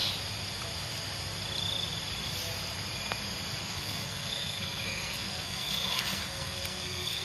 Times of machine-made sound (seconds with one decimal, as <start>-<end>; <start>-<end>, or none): 3.6-7.2